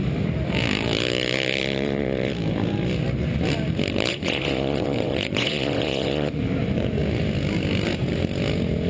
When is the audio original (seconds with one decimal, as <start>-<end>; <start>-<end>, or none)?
0.0-4.1; 6.4-8.9